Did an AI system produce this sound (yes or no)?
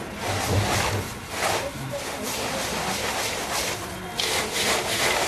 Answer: no